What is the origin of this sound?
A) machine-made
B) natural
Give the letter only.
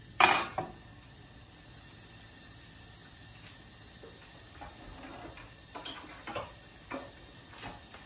B